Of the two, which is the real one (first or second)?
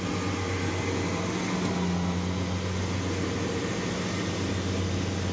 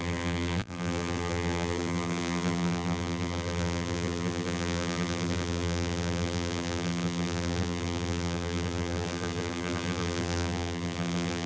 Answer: first